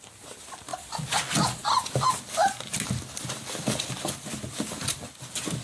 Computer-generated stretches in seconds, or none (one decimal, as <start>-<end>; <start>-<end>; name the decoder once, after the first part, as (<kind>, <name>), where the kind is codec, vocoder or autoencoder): none